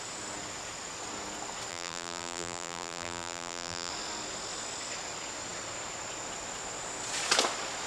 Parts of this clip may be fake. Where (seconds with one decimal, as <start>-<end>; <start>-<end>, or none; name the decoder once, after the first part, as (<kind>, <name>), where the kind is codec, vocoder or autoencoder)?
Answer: 1.7-3.9 (vocoder, BigVGAN v2)